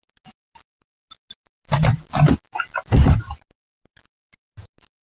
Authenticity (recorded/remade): recorded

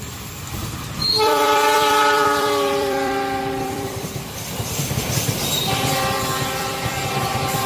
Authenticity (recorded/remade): remade